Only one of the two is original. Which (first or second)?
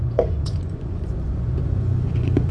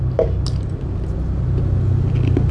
second